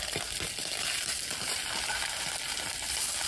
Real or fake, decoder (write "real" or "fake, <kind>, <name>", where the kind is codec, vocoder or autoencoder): real